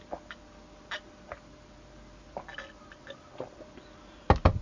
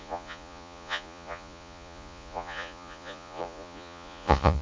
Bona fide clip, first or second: first